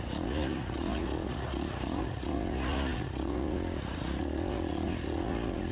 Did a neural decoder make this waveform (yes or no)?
yes